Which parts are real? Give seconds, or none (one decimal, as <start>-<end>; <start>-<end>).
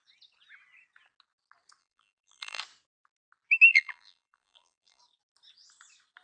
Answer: 0.0-1.8; 2.6-3.7; 5.0-6.2